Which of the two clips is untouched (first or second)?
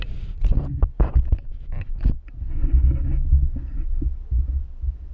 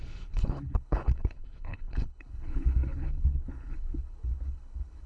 first